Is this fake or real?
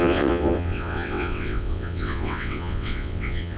fake